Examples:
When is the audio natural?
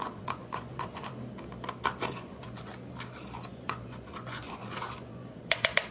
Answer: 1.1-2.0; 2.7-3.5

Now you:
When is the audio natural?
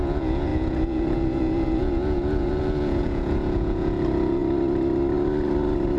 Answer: 4.4-6.0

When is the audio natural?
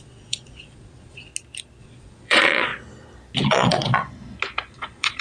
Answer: 1.3-1.8; 2.7-3.5; 4.0-4.7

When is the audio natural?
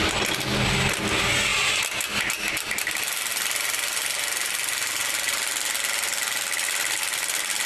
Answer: 0.0-7.7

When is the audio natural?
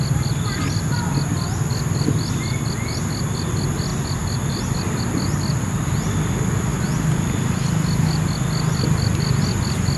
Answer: 0.0-10.0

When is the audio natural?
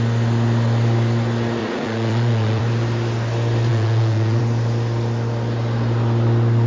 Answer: 0.0-1.6; 2.6-3.7; 4.4-6.7